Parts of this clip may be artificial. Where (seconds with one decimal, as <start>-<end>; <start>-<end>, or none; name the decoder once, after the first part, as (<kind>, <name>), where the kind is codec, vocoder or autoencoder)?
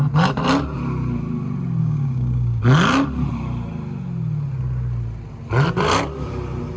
1.8-2.6 (codec, DAC)